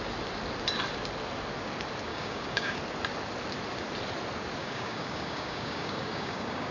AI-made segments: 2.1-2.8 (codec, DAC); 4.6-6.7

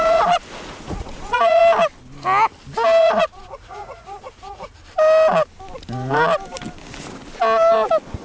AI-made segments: 0.0-1.6 (vocoder, Vocos); 3.0-4.8

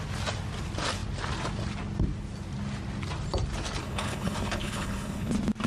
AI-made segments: 3.8-5.3 (codec, HILCodec)

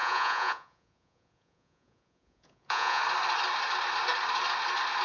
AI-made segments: 0.0-3.0 (vocoder, Vocos)

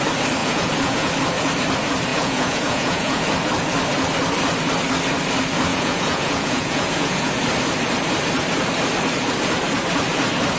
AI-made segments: 0.4-1.1 (vocoder, Vocos); 2.1-3.2; 5.7-7.3

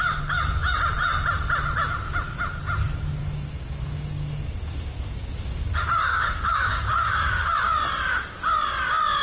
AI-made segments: 3.2-7.6 (codec, DAC)

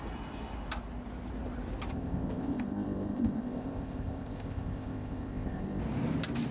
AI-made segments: 1.9-5.8 (codec, ZipCodec)